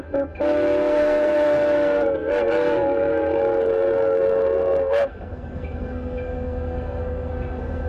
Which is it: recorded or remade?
remade